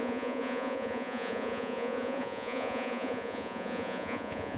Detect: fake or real fake